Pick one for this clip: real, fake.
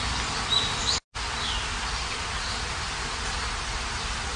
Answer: real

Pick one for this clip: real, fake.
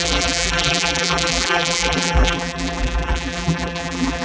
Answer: fake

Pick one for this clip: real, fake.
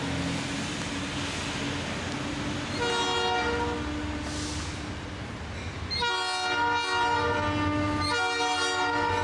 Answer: real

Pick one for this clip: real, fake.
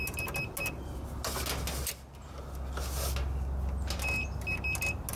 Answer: real